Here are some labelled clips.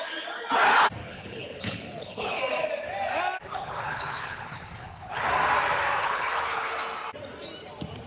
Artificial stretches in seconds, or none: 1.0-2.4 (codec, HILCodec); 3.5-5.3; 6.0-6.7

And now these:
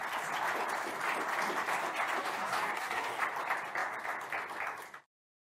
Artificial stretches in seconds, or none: 2.2-3.2 (codec, DAC)

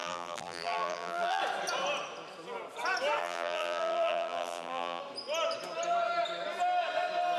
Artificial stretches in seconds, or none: 0.0-1.4 (vocoder, BigVGAN v2); 3.2-5.0

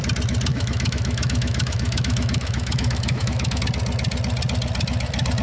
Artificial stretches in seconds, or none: 0.5-3.6 (autoencoder, DAC-VAE)